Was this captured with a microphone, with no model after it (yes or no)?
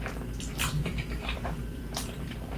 no